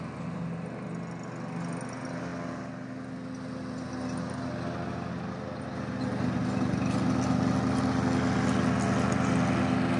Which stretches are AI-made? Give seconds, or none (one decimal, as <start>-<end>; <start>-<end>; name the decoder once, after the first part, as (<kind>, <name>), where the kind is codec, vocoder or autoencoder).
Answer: none